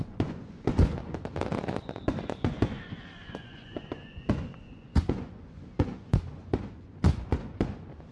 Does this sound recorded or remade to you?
remade